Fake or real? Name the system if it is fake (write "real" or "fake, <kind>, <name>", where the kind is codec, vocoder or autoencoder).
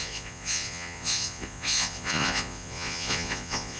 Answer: fake, vocoder, Vocos